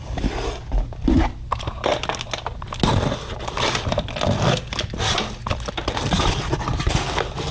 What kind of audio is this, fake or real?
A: real